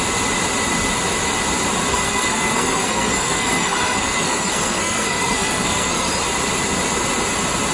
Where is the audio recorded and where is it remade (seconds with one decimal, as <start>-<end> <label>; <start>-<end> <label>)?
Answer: 0.0-1.9 recorded; 1.9-6.1 remade; 6.1-7.7 recorded